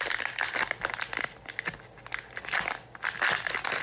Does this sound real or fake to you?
real